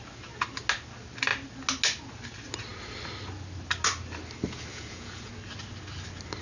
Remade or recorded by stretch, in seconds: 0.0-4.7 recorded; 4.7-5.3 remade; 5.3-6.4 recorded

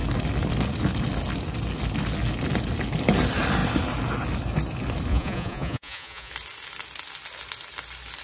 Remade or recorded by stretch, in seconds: 0.0-5.1 recorded; 5.1-6.3 remade; 6.3-8.2 recorded

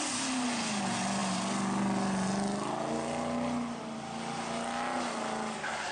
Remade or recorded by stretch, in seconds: 0.0-5.9 recorded

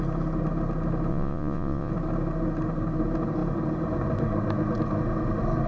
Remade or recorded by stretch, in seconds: 0.0-1.1 recorded; 1.1-1.9 remade; 1.9-5.7 recorded

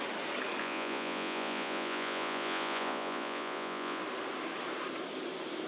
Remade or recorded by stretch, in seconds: 0.0-0.6 recorded; 0.6-4.0 remade; 4.0-5.7 recorded

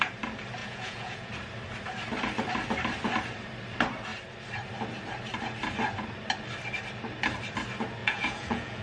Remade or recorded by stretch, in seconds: 0.0-0.6 recorded; 0.6-1.3 remade; 1.3-8.0 recorded; 8.0-8.8 remade